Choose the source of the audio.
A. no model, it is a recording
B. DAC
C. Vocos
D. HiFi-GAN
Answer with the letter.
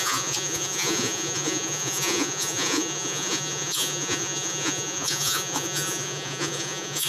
C